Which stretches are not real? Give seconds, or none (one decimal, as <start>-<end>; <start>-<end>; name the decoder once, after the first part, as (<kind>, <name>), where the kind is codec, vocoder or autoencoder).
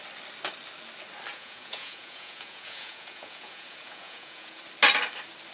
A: 1.3-4.6 (vocoder, Vocos)